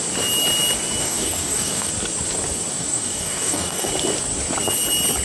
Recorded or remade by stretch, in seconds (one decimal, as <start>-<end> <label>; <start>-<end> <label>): 0.0-1.0 recorded; 1.0-1.9 remade; 1.9-2.7 recorded; 2.7-3.9 remade; 3.9-5.2 recorded